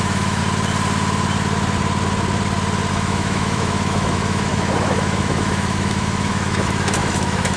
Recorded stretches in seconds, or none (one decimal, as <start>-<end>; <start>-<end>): 0.4-2.9